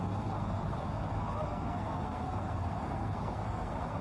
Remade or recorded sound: remade